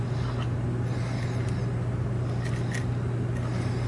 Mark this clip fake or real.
real